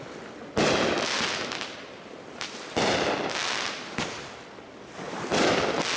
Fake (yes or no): no